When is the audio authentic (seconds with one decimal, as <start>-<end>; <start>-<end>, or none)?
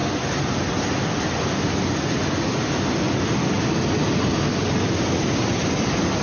0.0-6.2